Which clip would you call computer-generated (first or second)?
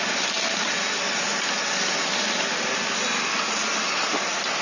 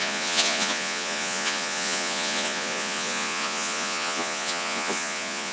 second